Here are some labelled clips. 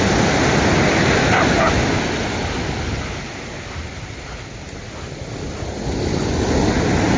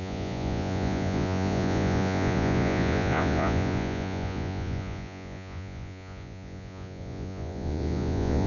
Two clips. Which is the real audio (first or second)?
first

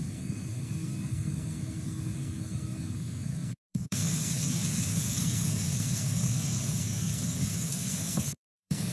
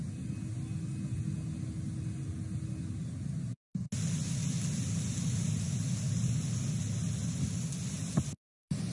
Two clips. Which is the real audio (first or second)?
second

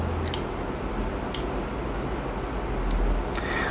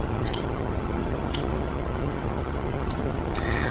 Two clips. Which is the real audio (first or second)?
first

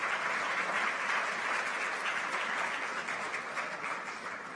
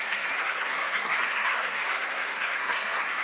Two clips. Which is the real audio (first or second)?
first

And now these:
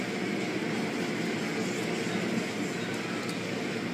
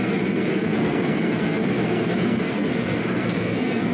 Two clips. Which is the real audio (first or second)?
first